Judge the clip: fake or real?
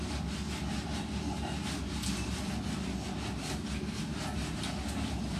real